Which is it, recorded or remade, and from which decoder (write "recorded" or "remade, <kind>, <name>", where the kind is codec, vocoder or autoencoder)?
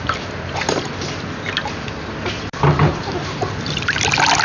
recorded